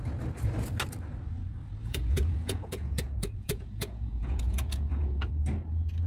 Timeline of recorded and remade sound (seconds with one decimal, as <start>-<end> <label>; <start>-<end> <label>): 0.0-1.8 recorded; 1.8-5.3 remade; 5.3-6.1 recorded